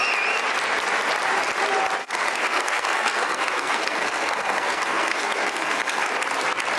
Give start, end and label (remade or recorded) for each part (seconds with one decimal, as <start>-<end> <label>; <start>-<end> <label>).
0.0-2.0 recorded; 2.0-6.1 remade; 6.1-6.8 recorded